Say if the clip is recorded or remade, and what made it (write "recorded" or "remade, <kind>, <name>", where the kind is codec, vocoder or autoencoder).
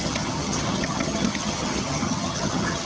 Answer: remade, vocoder, HiFi-GAN